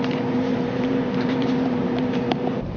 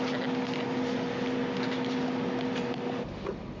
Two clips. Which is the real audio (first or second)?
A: second